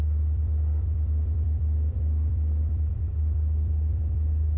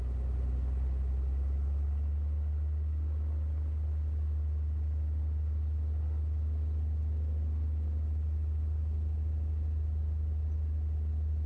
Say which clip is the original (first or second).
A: second